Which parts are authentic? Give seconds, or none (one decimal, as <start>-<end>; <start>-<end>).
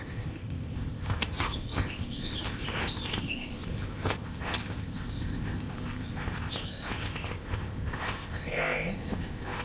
none